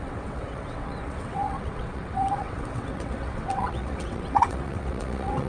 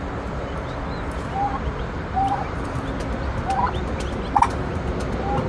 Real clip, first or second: second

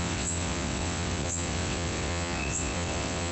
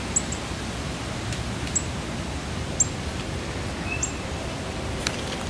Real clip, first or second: second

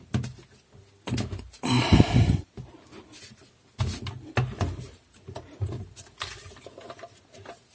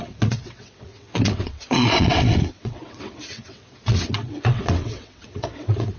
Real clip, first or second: first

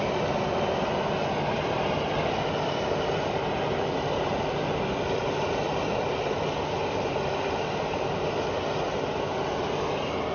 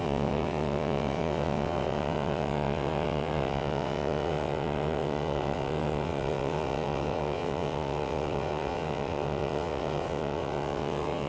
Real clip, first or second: first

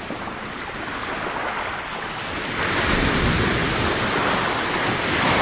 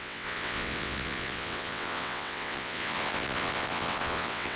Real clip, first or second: first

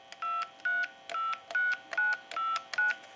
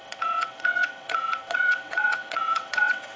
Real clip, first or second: first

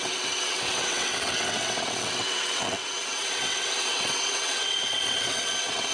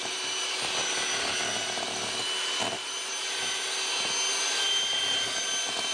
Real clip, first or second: second